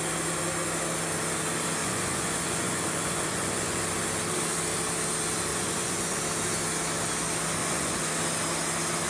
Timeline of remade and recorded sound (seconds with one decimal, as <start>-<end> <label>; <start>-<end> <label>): 0.0-1.8 recorded; 1.8-3.8 remade; 3.8-5.5 recorded; 5.5-6.2 remade; 6.2-7.6 recorded; 7.6-8.1 remade; 8.1-9.1 recorded